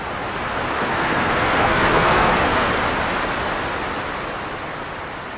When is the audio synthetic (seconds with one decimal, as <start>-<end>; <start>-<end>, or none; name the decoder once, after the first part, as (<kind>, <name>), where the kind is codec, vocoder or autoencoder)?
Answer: 0.8-2.7 (codec, SNAC)